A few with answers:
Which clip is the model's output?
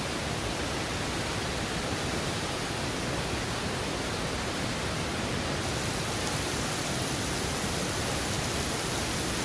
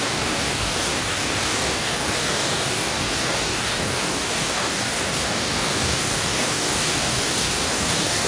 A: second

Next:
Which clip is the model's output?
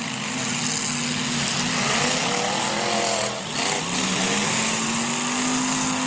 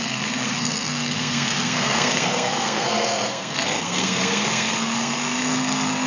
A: second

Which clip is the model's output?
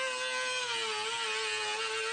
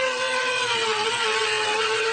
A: second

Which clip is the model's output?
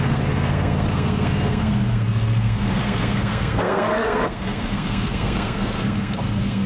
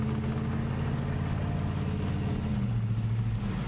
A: first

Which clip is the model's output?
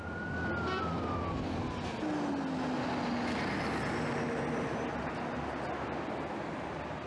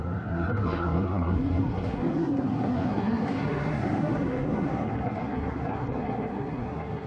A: second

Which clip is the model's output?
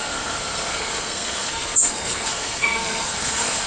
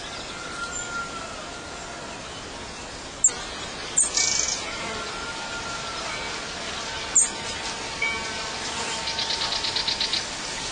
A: first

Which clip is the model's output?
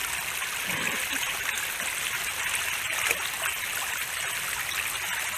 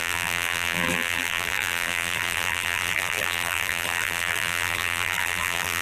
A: second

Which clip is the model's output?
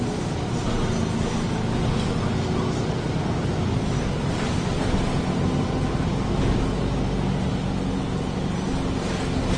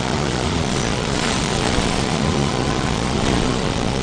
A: second